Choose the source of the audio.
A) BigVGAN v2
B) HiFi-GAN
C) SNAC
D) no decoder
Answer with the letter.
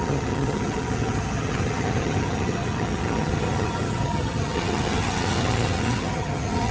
B